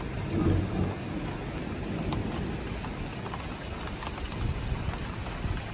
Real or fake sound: real